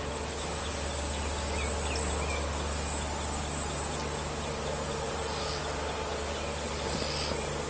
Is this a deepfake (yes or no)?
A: no